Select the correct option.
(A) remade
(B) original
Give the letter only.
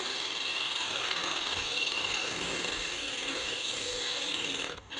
A